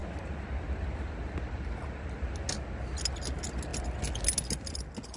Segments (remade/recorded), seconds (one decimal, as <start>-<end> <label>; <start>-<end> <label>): 0.0-5.2 recorded